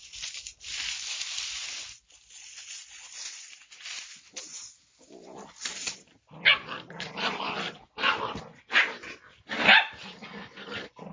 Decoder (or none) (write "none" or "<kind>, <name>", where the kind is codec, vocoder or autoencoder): none